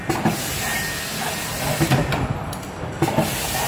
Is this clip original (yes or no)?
yes